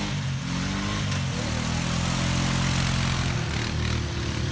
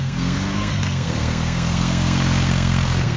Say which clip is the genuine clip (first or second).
first